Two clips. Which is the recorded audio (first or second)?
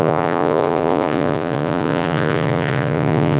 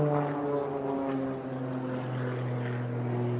second